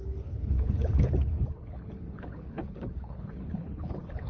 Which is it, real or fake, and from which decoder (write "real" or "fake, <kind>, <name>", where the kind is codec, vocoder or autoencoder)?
fake, codec, HILCodec